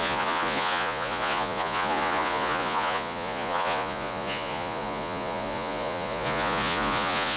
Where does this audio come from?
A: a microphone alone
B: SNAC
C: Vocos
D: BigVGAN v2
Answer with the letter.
C